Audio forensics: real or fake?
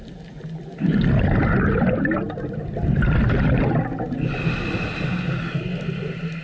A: real